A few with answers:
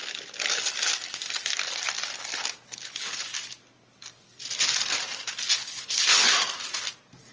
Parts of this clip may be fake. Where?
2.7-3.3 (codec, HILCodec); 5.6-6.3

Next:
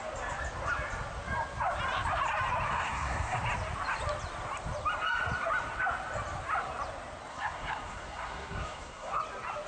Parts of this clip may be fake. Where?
2.7-3.4 (codec, SNAC); 7.3-9.2

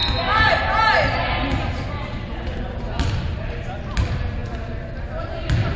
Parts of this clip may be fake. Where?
none

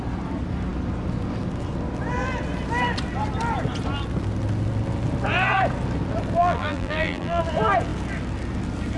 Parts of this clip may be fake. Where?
6.4-7.4 (vocoder, BigVGAN v2)

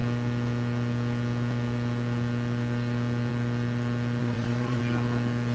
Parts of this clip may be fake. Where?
4.2-4.8 (vocoder, Vocos)

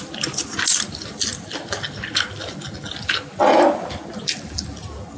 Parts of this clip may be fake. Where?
0.0-5.2 (vocoder, BigVGAN v2)

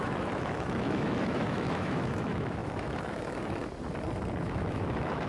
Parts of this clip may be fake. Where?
0.0-3.6 (autoencoder, DAC-VAE); 4.4-5.3